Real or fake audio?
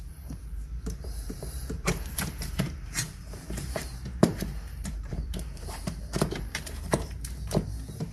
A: fake